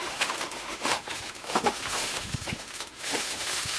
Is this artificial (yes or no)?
yes